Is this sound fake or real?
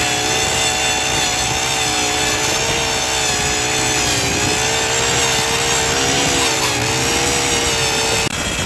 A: real